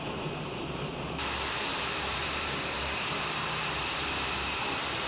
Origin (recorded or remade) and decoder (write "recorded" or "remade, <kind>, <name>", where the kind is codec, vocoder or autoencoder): remade, vocoder, BigVGAN v2